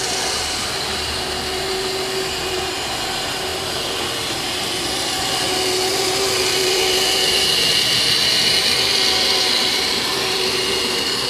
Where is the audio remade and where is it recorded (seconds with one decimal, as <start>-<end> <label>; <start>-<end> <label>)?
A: 0.0-3.5 recorded; 3.5-4.8 remade; 4.8-11.3 recorded